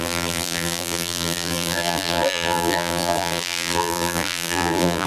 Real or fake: fake